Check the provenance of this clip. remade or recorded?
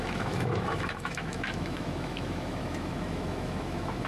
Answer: remade